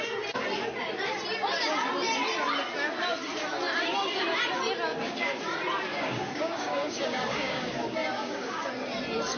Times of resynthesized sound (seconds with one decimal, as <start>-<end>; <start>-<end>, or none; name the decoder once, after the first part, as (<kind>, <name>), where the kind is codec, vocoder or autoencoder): 4.9-5.4 (codec, DAC); 5.9-8.7